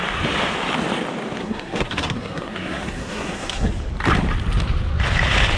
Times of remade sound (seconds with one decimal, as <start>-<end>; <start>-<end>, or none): 1.4-3.7